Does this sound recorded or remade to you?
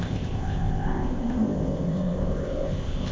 remade